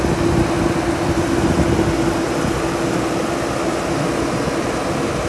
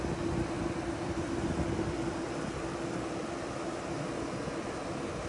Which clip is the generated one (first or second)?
second